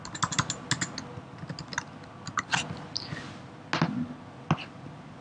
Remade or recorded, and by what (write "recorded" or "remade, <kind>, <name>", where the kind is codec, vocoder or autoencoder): recorded